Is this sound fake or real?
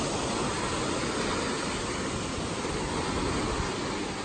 real